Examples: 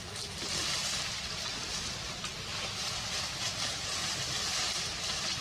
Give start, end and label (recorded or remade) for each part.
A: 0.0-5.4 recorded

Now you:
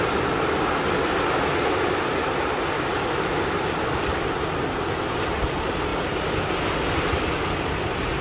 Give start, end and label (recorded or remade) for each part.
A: 0.0-8.2 recorded